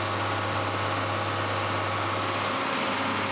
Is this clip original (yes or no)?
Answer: yes